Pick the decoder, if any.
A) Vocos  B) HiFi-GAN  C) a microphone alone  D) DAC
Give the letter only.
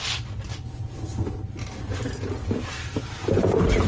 C